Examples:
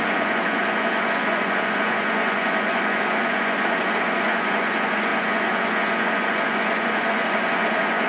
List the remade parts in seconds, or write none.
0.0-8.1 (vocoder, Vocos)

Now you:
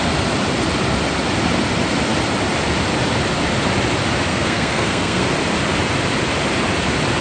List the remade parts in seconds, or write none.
4.3-5.3 (codec, SNAC)

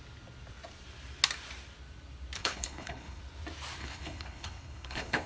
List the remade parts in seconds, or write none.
2.4-3.2 (codec, HILCodec); 3.8-5.3

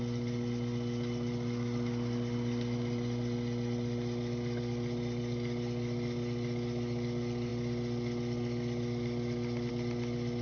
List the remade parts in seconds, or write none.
none

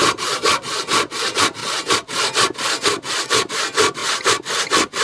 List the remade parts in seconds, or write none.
0.0-1.6 (vocoder, BigVGAN v2); 3.5-4.0

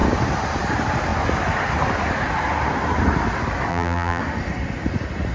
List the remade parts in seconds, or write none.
3.7-4.2 (vocoder, BigVGAN v2)

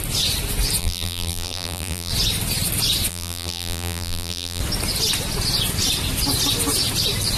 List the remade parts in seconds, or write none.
0.8-2.1 (vocoder, BigVGAN v2); 3.1-4.6

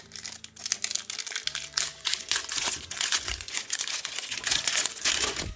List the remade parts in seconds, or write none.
1.9-5.6 (vocoder, Vocos)